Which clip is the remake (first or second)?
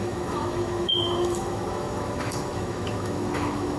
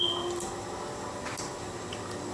first